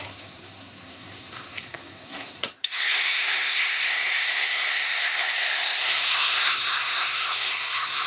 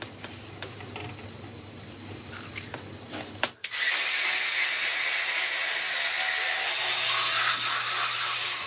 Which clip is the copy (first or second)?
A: first